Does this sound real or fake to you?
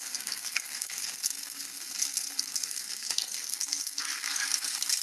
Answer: fake